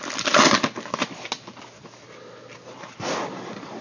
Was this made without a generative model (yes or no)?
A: yes